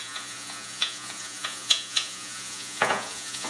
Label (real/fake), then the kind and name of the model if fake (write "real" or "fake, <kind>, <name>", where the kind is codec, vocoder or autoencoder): fake, vocoder, Vocos